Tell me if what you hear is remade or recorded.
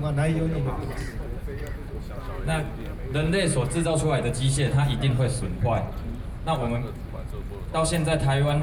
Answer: recorded